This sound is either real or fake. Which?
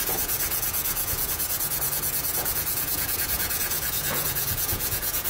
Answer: fake